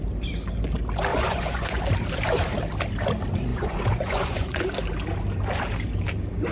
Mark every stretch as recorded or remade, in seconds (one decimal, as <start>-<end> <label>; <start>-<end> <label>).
0.0-1.1 recorded; 1.1-1.8 remade; 1.8-3.5 recorded; 3.5-4.6 remade; 4.6-6.5 recorded